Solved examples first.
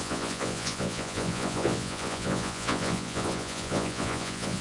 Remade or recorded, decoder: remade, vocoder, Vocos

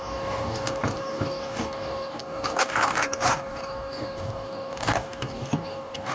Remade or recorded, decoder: remade, codec, DAC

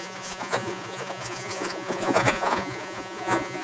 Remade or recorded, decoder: remade, vocoder, Vocos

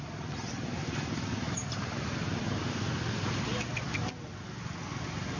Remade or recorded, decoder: recorded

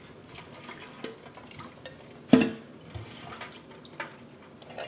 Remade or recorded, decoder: recorded